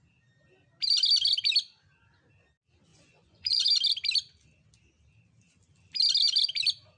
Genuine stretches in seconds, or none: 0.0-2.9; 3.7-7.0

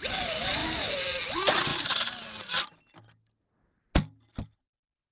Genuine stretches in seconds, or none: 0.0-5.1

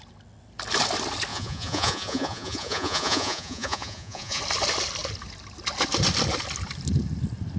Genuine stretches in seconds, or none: 0.0-1.3; 4.4-7.6

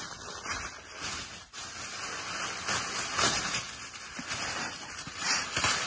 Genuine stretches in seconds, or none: 0.0-5.9

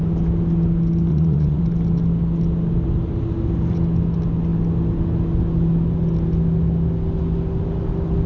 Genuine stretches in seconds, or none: 0.0-1.1; 1.6-8.3

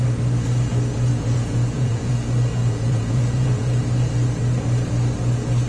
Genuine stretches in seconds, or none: 0.0-1.1; 2.1-2.6; 3.8-5.7